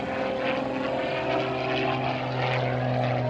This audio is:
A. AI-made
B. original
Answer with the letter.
B